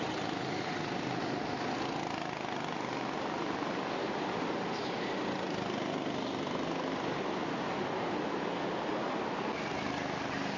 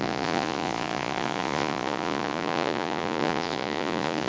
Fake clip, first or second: second